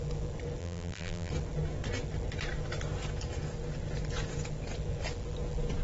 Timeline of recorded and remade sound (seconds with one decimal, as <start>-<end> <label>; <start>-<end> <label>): 0.0-0.6 recorded; 0.6-1.3 remade; 1.3-5.8 recorded